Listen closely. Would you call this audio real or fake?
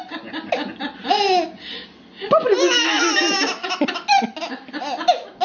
real